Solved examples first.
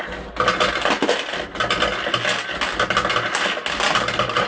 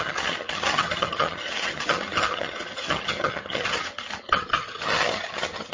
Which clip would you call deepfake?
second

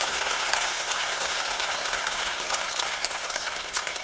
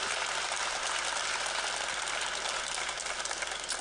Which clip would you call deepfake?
first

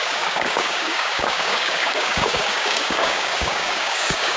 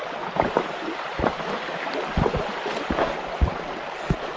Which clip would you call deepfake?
first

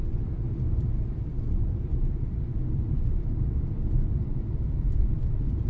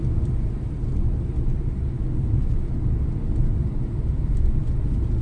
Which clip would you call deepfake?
first